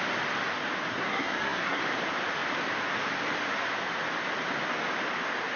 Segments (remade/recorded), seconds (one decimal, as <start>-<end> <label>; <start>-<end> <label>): 0.0-0.9 recorded; 0.9-1.8 remade; 1.8-5.6 recorded